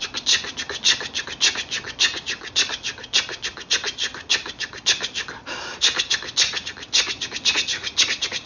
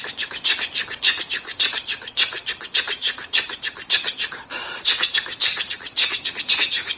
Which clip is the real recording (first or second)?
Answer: first